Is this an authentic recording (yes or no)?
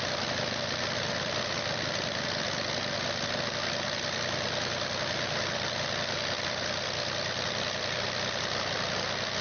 yes